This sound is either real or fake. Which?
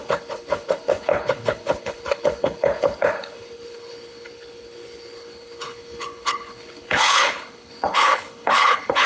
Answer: fake